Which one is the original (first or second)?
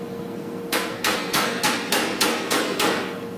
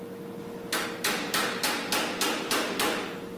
second